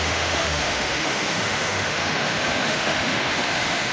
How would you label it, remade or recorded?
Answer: remade